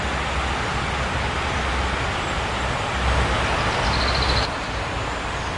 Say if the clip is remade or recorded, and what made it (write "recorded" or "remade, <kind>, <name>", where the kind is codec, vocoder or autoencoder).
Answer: recorded